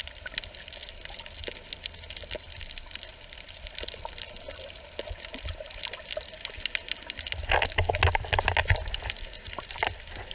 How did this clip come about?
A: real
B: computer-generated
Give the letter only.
A